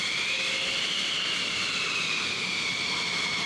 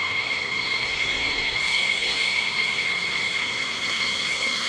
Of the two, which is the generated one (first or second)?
second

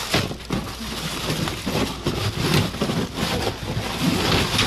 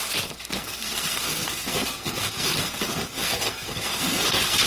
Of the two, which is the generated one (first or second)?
second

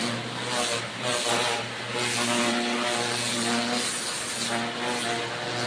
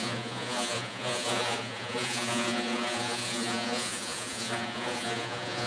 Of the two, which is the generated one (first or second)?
second